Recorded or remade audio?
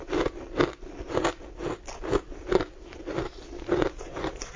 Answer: recorded